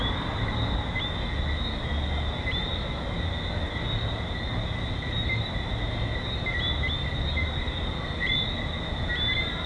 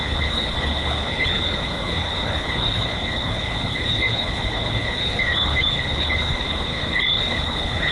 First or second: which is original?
first